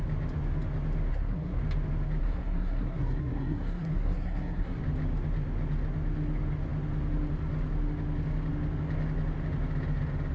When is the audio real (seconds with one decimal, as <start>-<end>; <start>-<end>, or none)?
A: 0.0-1.1; 1.6-2.2; 4.8-10.3